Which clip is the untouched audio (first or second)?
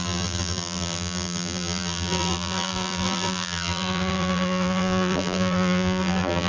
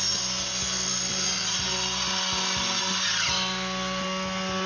second